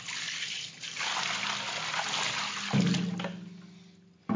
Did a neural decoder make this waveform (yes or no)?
no